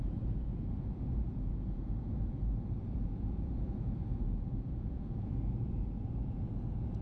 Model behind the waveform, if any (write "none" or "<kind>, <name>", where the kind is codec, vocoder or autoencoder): vocoder, Vocos